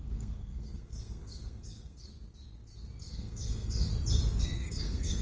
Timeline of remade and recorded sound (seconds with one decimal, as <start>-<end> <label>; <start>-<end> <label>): 0.0-2.1 remade; 2.1-3.0 recorded; 3.0-3.9 remade; 3.9-4.4 recorded; 4.4-5.2 remade